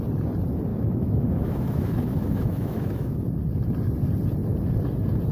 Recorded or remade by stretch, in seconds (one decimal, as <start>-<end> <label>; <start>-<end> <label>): 0.0-0.7 recorded; 0.7-3.2 remade; 3.2-5.3 recorded

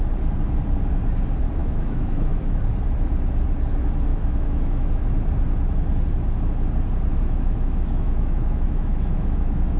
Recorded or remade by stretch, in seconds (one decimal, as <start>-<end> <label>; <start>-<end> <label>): 0.0-1.6 recorded; 1.6-2.5 remade; 2.5-4.1 recorded; 4.1-4.9 remade; 4.9-7.1 recorded; 7.1-9.8 remade